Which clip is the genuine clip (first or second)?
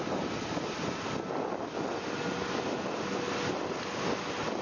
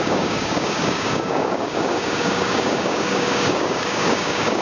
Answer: first